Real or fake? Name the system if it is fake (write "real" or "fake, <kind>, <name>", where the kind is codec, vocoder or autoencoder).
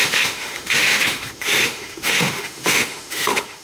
fake, autoencoder, DAC-VAE